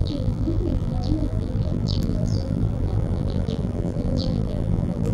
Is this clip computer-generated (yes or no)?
yes